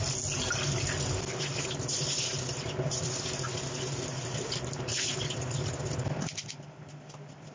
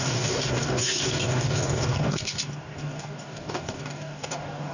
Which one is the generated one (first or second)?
second